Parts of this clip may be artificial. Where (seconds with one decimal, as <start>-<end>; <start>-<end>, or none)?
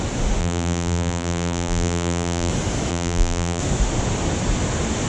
0.4-2.5; 2.9-3.6